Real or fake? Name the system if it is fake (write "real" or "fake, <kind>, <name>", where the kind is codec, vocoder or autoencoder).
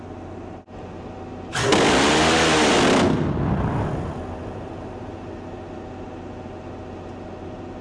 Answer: real